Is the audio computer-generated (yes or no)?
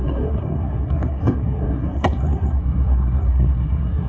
yes